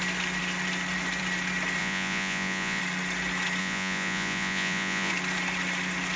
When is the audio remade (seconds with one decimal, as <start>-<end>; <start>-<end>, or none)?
1.8-2.8; 3.6-5.1